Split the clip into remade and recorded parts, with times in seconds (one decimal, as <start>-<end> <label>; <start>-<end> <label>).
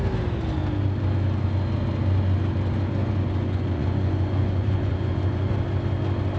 0.0-3.0 recorded; 3.0-5.5 remade; 5.5-6.4 recorded